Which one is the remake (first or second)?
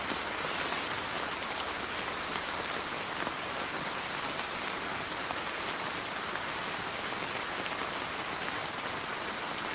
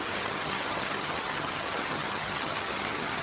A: second